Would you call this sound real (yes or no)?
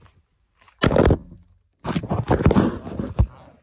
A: yes